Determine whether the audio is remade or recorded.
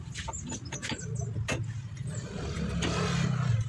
recorded